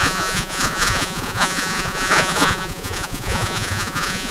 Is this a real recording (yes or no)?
no